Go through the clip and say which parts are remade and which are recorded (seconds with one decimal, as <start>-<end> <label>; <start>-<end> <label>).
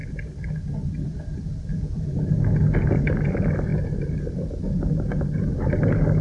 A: 0.0-1.7 recorded; 1.7-2.3 remade; 2.3-6.2 recorded